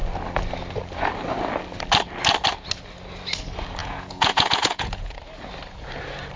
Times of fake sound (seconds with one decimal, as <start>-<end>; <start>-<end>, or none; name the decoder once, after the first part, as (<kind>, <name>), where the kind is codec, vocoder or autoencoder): 3.8-5.2 (vocoder, Vocos)